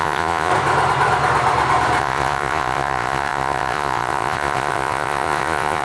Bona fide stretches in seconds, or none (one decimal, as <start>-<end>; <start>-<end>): 0.5-2.0